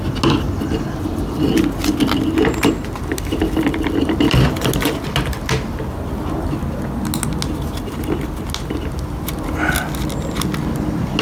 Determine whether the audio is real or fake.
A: real